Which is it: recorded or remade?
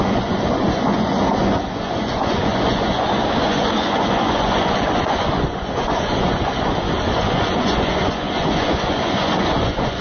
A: remade